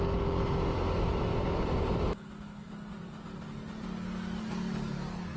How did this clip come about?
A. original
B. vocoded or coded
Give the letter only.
A